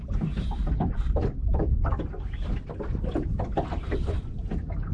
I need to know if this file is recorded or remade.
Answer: recorded